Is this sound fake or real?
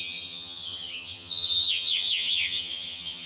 fake